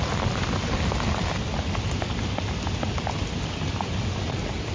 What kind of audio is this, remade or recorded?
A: recorded